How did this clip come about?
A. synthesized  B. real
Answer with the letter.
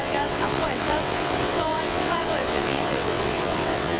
A